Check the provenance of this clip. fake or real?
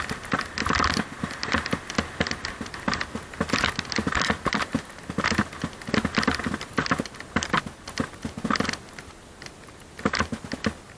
real